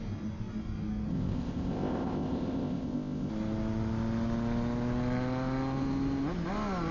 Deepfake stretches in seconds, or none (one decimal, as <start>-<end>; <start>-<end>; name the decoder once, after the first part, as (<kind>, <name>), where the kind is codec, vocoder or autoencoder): 1.1-3.3 (codec, ZipCodec)